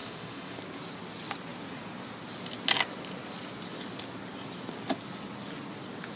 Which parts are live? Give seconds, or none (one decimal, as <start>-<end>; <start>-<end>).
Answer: 0.6-6.2